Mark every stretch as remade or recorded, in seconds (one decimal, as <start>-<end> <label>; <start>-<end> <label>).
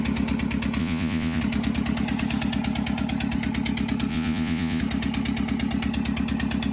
0.0-0.8 recorded; 0.8-1.4 remade; 1.4-4.1 recorded; 4.1-4.8 remade; 4.8-6.7 recorded